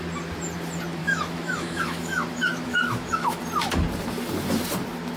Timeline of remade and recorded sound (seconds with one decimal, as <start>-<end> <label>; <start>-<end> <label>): 0.0-1.0 recorded; 1.0-3.4 remade; 3.4-5.2 recorded